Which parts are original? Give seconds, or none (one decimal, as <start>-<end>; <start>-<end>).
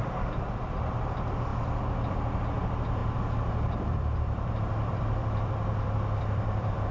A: 1.5-2.1